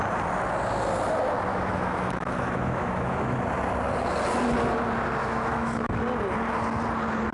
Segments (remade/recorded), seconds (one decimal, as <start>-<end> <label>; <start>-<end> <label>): 0.0-1.5 recorded; 1.5-3.4 remade; 3.4-5.2 recorded; 5.2-6.0 remade; 6.0-7.3 recorded